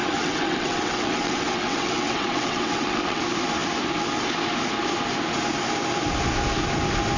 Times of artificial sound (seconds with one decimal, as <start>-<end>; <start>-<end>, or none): 0.0-3.2

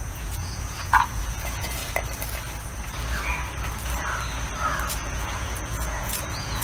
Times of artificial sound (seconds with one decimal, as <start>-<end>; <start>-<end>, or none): 0.0-1.8; 4.9-6.6

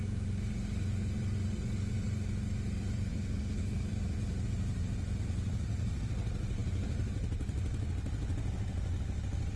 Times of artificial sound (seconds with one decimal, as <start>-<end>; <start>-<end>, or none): 3.1-3.8

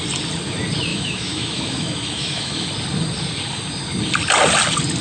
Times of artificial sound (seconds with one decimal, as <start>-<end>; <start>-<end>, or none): 0.9-2.7

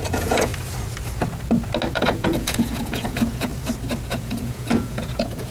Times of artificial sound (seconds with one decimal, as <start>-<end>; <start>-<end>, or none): 0.0-0.5; 1.9-3.5; 4.1-5.5

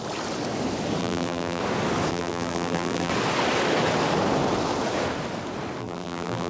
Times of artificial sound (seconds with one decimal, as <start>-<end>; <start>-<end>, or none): 1.0-1.6; 2.1-3.1; 5.8-6.5